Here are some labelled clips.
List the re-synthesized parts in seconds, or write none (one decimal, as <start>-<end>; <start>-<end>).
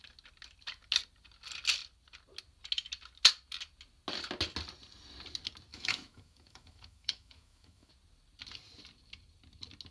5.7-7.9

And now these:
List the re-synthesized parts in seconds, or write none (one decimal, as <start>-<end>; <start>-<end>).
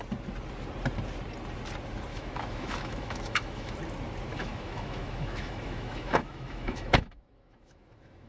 2.1-3.7; 4.3-8.3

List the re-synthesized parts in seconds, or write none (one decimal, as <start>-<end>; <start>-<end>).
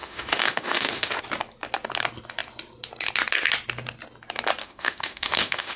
0.0-1.2; 4.6-5.8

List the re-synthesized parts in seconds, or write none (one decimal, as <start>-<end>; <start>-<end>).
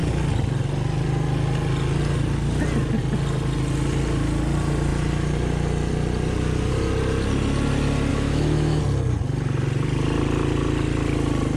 8.1-8.8